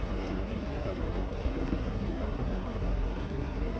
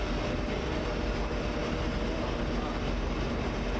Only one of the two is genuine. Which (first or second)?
second